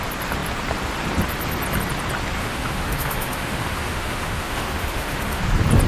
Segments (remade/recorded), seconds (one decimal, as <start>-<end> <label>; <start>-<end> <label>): 0.0-2.4 recorded; 2.4-5.4 remade; 5.4-5.9 recorded